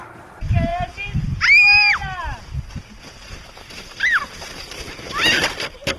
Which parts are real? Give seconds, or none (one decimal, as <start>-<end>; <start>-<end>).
0.0-6.0

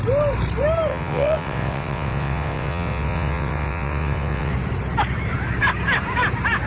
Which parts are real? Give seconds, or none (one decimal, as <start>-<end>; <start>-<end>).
0.0-0.9; 4.5-6.7

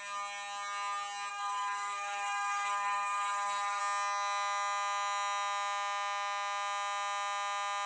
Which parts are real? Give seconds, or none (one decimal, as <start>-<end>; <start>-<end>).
0.0-1.3; 3.8-7.9